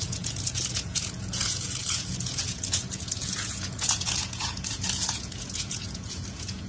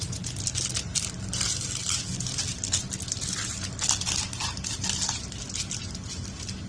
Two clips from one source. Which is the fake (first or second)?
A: first